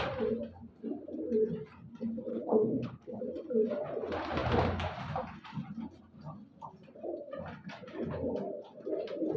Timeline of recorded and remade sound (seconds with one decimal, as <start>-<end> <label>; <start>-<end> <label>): 0.0-2.3 recorded; 2.3-3.2 remade; 3.2-9.4 recorded